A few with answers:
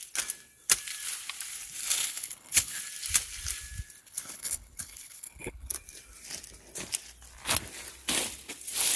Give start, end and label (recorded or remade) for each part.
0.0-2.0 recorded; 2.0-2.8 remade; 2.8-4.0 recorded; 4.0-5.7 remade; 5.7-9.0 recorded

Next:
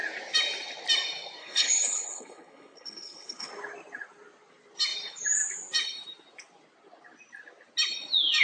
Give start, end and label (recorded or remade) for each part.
0.0-1.4 recorded; 1.4-3.5 remade; 3.5-8.4 recorded

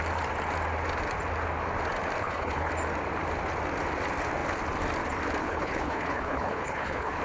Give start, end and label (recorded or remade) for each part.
0.0-2.2 recorded; 2.2-2.7 remade; 2.7-5.4 recorded; 5.4-7.2 remade

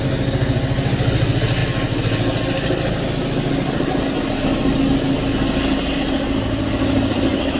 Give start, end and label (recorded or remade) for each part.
0.0-7.6 recorded

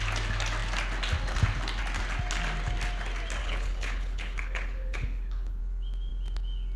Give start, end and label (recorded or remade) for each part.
0.0-3.4 recorded; 3.4-5.6 remade; 5.6-6.8 recorded

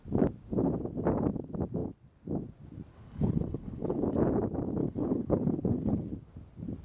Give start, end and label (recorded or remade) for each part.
0.0-2.9 recorded; 2.9-4.0 remade; 4.0-4.8 recorded; 4.8-6.0 remade; 6.0-6.8 recorded

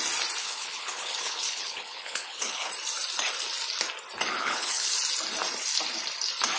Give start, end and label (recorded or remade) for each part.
0.0-0.4 recorded; 0.4-2.7 remade; 2.7-4.4 recorded; 4.4-4.9 remade; 4.9-6.6 recorded